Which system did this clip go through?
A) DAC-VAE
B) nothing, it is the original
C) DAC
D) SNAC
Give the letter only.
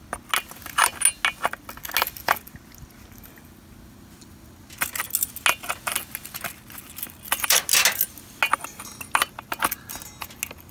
B